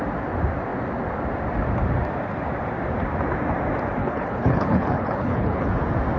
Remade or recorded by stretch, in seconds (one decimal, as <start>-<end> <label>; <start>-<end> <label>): 0.0-4.0 recorded; 4.0-5.7 remade; 5.7-6.2 recorded